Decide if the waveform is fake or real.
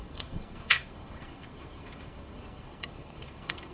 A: fake